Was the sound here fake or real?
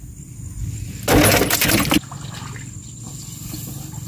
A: real